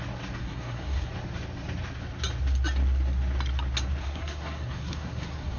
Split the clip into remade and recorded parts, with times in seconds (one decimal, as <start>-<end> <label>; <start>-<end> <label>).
0.0-0.4 recorded; 0.4-1.1 remade; 1.1-4.0 recorded; 4.0-5.6 remade